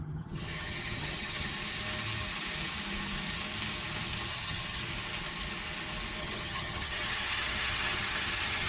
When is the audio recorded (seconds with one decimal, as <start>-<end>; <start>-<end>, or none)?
1.5-4.3; 4.8-6.2